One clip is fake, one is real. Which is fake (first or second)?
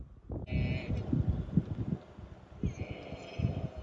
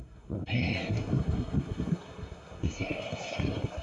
second